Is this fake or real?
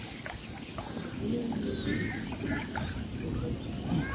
real